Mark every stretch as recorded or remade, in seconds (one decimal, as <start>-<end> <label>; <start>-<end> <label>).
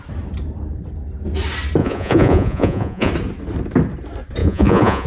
0.0-1.8 recorded; 1.8-3.1 remade; 3.1-4.4 recorded; 4.4-5.1 remade